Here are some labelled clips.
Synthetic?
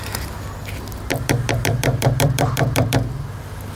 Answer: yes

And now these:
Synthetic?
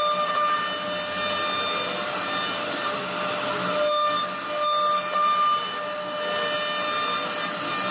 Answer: no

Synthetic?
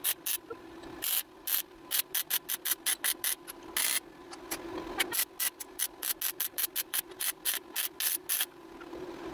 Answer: no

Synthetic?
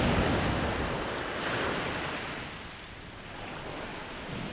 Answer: no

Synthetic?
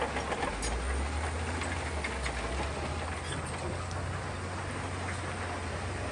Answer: no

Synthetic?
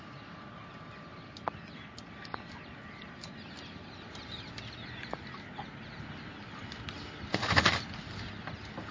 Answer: no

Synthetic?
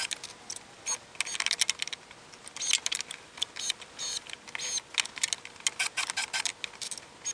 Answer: no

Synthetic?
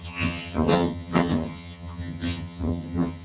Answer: yes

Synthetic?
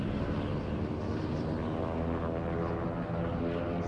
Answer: no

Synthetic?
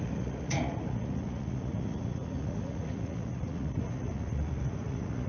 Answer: yes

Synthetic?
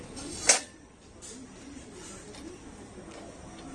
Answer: no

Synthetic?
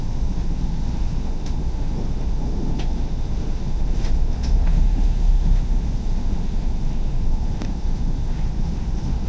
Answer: yes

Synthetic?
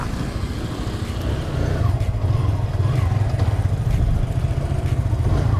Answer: no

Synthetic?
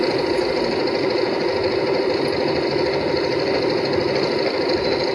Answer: no